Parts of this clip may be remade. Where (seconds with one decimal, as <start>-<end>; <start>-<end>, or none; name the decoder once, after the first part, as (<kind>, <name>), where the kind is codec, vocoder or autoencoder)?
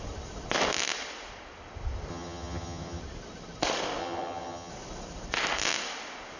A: 2.1-3.0 (vocoder, HiFi-GAN); 4.0-4.7